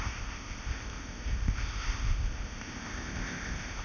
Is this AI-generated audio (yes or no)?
yes